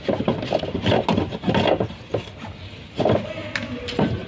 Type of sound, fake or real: real